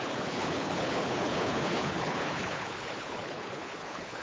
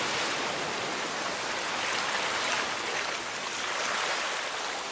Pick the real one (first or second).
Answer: second